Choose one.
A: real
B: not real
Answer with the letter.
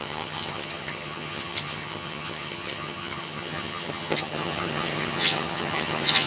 B